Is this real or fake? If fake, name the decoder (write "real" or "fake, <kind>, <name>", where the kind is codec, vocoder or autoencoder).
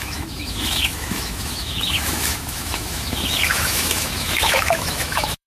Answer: fake, autoencoder, DAC-VAE